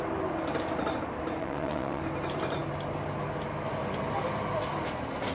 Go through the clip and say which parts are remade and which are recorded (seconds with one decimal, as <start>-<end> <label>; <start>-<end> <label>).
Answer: 0.0-1.4 recorded; 1.4-2.0 remade; 2.0-5.3 recorded